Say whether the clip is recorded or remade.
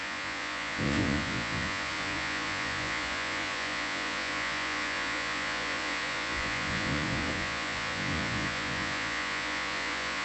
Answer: remade